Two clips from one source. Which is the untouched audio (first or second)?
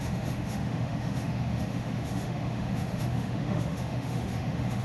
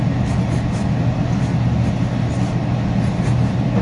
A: second